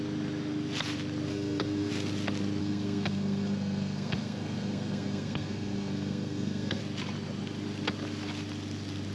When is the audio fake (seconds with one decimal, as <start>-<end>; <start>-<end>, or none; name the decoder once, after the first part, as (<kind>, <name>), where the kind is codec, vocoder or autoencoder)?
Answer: 1.3-1.9 (codec, SNAC); 2.6-6.8